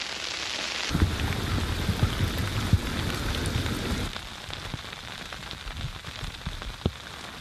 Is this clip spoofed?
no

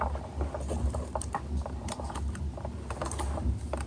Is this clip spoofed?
no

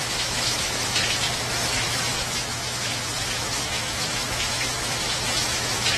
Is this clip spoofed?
yes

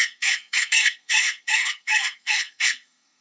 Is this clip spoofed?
yes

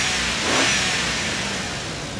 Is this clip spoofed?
no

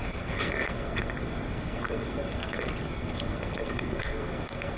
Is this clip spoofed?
yes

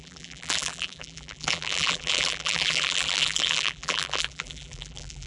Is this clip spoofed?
yes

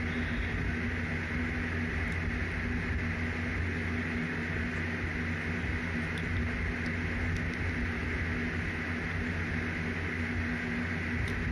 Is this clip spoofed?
no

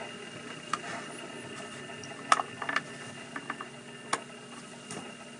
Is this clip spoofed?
no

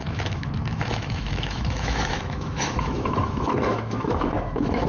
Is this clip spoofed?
yes